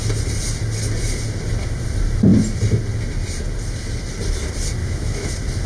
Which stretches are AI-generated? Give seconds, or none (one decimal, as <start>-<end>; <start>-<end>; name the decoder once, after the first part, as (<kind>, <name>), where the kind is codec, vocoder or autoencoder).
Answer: 4.8-5.3 (autoencoder, DAC-VAE)

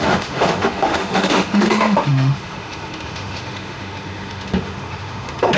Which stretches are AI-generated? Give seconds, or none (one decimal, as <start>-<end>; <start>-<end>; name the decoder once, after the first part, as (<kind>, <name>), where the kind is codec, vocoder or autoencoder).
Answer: 0.0-5.6 (autoencoder, DAC-VAE)

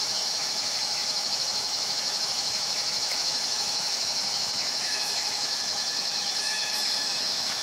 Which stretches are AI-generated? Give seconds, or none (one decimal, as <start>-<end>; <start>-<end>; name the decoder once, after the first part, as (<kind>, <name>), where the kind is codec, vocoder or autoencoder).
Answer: 0.0-7.6 (autoencoder, DAC-VAE)

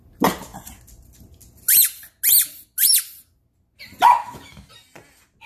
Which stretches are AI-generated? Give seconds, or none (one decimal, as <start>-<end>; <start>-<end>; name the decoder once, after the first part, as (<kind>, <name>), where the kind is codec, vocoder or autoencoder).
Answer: 4.2-4.7 (autoencoder, DAC-VAE)

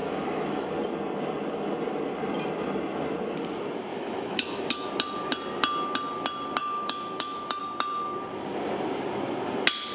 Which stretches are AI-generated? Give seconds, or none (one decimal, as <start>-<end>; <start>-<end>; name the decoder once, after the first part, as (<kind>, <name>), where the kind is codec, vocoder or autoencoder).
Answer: 0.0-0.7 (autoencoder, DAC-VAE); 3.9-4.9; 6.6-7.6

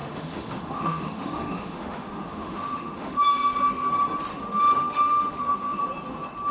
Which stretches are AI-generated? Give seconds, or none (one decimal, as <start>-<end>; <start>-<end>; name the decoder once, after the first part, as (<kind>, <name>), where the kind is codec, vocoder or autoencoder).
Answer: 0.0-3.9 (autoencoder, DAC-VAE); 4.3-5.8